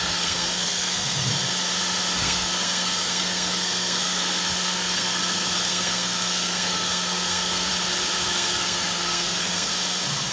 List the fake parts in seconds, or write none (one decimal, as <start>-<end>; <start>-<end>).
0.0-1.3; 2.2-7.7; 8.3-9.7